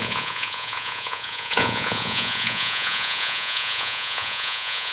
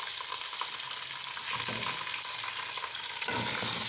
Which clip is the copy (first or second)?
first